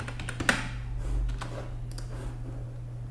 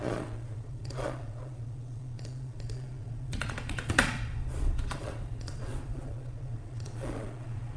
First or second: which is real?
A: first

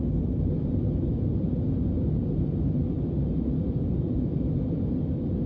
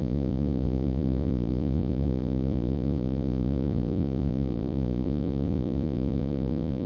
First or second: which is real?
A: first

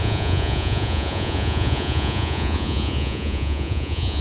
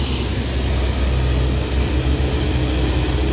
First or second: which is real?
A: second